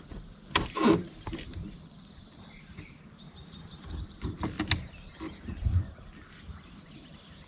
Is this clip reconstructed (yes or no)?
yes